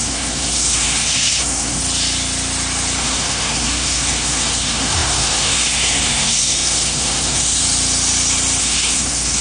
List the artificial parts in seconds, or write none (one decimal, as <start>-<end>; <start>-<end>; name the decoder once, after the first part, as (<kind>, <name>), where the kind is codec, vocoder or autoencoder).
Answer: 0.0-1.8 (codec, SNAC); 3.0-7.6; 8.6-9.4